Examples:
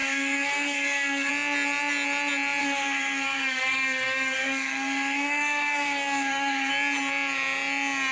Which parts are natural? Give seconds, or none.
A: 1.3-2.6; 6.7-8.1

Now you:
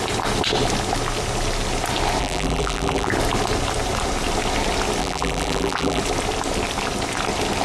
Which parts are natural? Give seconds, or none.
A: 0.0-2.2; 3.1-5.0; 6.0-7.6

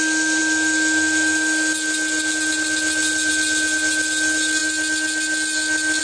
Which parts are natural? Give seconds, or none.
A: 0.0-6.0

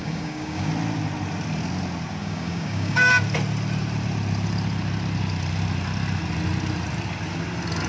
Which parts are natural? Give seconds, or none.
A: 0.7-2.2; 3.1-7.9